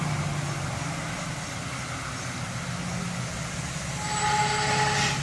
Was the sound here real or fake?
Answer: real